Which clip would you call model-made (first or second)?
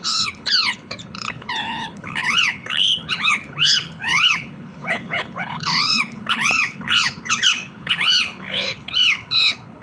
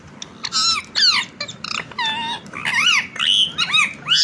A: first